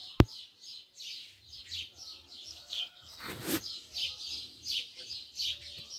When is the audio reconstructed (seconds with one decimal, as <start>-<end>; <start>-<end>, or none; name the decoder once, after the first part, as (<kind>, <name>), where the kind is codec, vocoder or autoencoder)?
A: 2.5-3.3 (codec, SNAC)